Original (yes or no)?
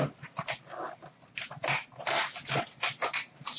yes